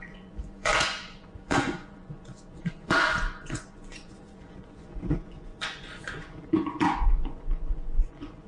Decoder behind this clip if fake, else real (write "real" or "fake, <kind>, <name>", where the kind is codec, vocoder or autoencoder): fake, vocoder, Vocos